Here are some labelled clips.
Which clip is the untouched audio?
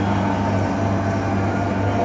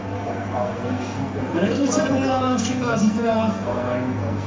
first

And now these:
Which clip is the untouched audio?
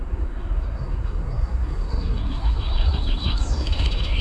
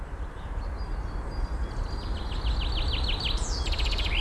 second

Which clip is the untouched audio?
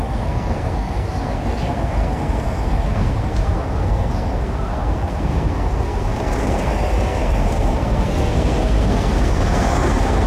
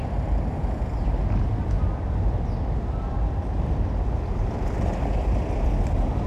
second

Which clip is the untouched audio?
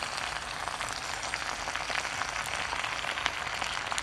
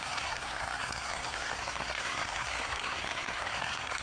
first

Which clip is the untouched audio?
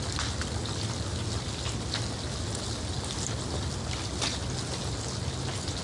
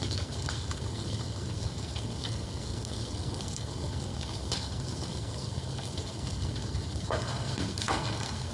first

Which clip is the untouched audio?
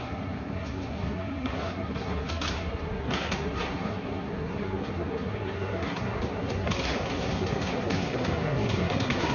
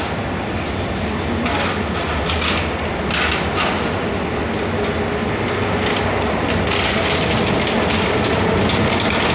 second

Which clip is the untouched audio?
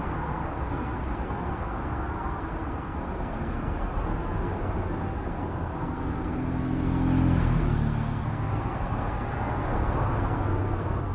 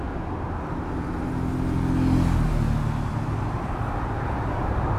second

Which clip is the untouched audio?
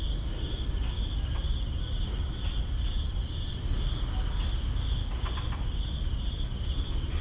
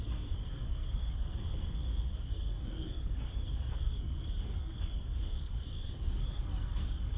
first